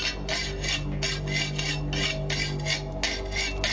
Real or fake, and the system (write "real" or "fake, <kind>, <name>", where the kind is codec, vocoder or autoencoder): real